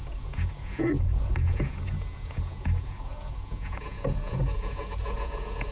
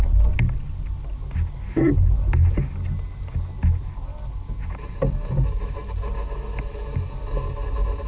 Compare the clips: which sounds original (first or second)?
second